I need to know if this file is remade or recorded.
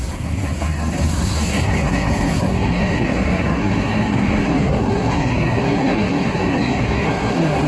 remade